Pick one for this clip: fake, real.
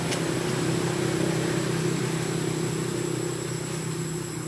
real